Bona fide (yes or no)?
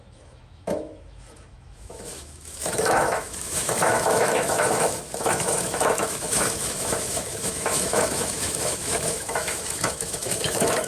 no